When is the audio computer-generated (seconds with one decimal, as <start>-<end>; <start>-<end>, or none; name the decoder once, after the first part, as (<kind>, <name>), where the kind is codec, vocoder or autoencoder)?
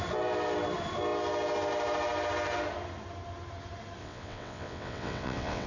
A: 4.0-5.7 (vocoder, WaveNeXt)